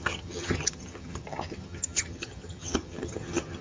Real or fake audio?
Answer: fake